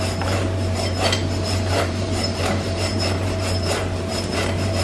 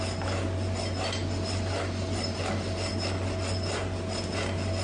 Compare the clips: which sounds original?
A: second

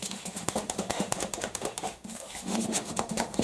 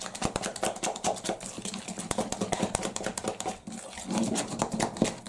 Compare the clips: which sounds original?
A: second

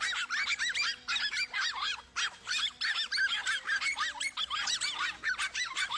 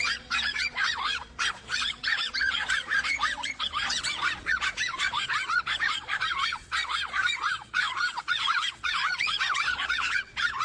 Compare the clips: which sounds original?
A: first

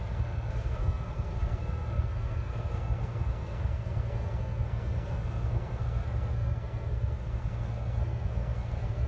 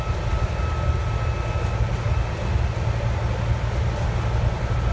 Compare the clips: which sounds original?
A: second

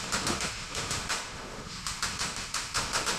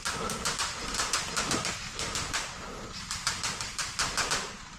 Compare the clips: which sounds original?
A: second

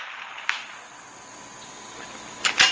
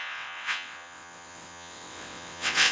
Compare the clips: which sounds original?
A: first